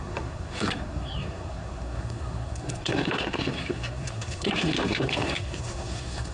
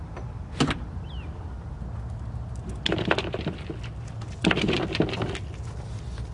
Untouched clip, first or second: second